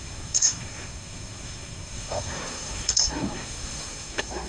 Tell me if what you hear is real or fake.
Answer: fake